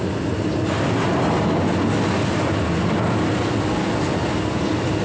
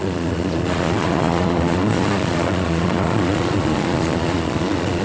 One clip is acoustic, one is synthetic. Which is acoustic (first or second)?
first